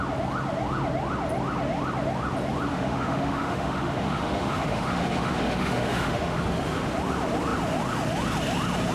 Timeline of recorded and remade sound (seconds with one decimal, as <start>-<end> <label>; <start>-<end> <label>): 0.0-2.7 recorded; 2.7-6.4 remade; 6.4-8.9 recorded